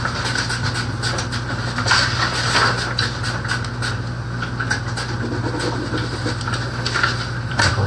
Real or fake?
real